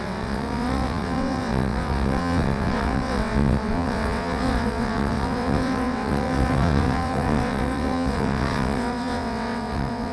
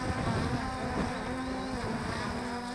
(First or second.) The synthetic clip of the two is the first